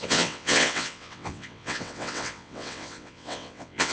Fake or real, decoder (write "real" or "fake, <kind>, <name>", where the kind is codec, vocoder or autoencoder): fake, vocoder, WaveNeXt